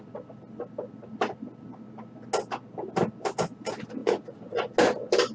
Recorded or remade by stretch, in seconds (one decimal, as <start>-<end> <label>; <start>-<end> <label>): 0.0-4.0 recorded; 4.0-4.7 remade; 4.7-5.3 recorded